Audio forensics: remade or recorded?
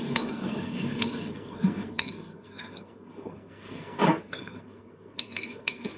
remade